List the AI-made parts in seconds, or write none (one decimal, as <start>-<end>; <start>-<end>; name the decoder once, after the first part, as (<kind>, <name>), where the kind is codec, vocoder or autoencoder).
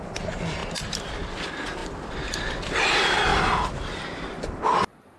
3.3-4.6 (vocoder, BigVGAN v2)